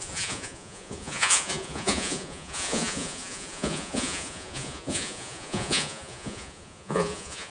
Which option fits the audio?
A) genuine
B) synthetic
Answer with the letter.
B